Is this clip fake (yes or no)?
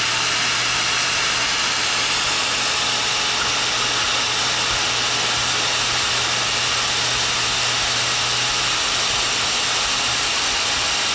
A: no